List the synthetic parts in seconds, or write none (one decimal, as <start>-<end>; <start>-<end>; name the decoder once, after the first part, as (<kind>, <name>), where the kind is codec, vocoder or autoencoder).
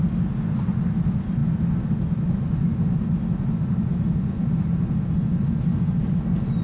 none